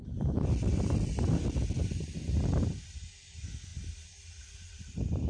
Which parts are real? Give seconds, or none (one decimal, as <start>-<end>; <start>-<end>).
0.0-5.3